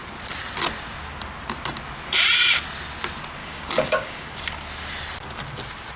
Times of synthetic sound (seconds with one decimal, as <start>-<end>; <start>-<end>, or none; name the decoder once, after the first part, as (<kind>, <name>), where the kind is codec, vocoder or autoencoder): 3.4-4.4 (codec, DAC)